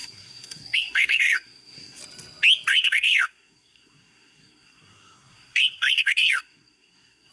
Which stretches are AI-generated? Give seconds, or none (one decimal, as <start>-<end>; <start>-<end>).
0.0-2.0; 2.7-7.3